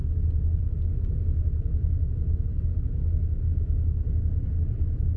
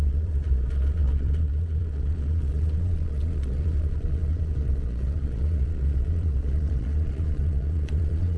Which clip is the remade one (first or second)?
second